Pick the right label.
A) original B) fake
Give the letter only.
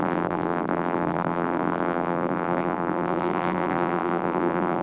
B